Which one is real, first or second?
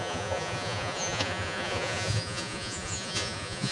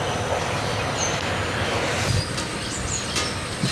second